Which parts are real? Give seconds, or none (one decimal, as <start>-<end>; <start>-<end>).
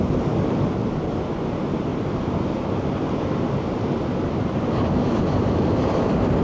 0.0-6.4